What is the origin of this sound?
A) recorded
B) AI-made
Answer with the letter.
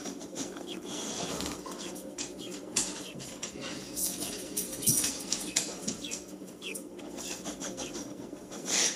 B